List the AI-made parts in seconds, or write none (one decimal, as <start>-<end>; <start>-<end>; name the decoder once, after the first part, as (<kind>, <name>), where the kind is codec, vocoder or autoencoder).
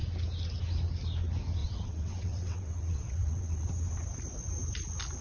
1.6-3.7 (vocoder, WaveNeXt)